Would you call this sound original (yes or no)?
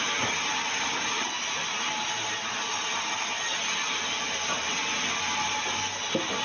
yes